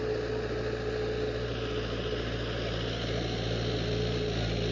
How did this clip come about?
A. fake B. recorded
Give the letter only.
B